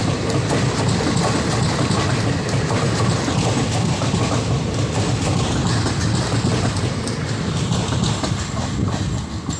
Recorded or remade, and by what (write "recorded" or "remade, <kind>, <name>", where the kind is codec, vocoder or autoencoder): recorded